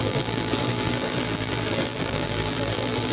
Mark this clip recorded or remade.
remade